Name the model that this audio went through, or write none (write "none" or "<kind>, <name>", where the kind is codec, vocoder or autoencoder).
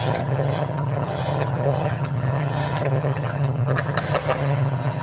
vocoder, HiFi-GAN